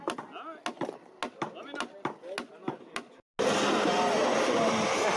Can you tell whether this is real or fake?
real